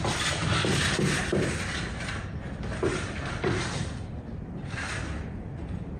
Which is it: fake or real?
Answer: real